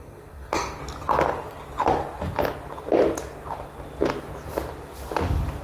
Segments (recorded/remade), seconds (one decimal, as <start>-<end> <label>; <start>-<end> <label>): 0.0-0.8 remade; 0.8-5.6 recorded